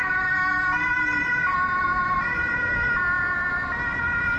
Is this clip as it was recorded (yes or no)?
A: yes